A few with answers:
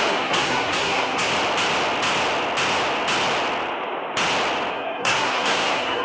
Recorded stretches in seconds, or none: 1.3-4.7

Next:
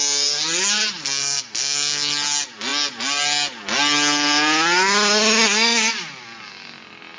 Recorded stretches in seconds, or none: 0.0-7.2

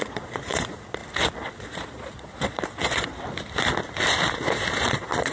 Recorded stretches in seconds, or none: 1.0-1.5; 3.1-4.5

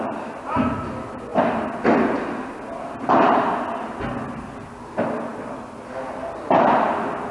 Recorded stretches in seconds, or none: 0.0-7.3

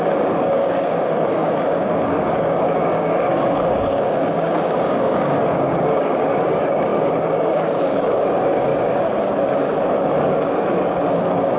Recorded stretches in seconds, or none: 8.7-9.3